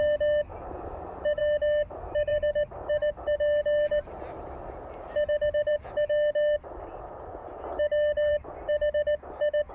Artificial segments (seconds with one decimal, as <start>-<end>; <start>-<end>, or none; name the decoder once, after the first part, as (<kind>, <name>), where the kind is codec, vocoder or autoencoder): 0.5-1.4 (vocoder, BigVGAN v2); 2.3-4.2